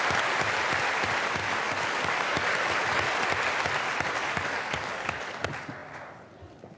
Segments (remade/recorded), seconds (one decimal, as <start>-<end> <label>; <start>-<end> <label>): 0.0-1.4 recorded; 1.4-2.7 remade; 2.7-4.2 recorded; 4.2-5.3 remade; 5.3-6.8 recorded